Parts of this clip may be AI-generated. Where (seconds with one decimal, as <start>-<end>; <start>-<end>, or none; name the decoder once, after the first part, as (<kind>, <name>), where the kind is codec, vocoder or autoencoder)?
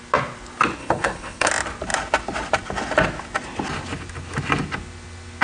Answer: 0.8-1.5 (codec, HILCodec)